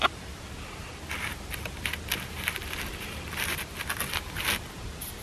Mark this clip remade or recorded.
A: recorded